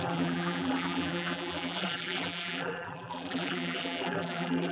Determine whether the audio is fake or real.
fake